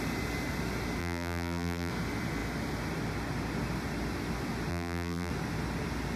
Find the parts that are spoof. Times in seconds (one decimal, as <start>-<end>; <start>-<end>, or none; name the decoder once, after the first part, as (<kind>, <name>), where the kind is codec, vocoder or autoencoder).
1.0-1.9 (vocoder, BigVGAN v2); 4.7-5.3